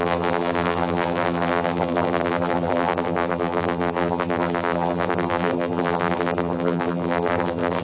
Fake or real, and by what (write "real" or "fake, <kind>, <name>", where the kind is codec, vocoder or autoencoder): fake, vocoder, BigVGAN v2